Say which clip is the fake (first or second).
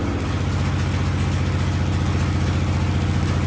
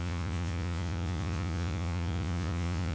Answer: second